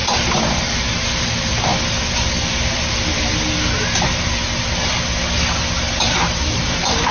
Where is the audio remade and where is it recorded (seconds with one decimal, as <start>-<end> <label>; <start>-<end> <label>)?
0.0-0.5 recorded; 0.5-1.7 remade; 1.7-6.0 recorded; 6.0-7.1 remade